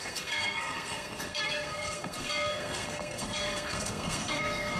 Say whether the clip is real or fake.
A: fake